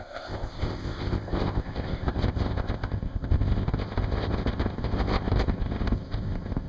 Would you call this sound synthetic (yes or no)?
yes